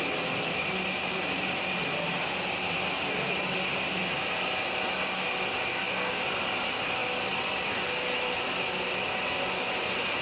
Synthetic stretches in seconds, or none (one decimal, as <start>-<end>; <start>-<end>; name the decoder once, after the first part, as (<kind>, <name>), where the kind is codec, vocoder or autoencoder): 5.7-6.2 (codec, DAC)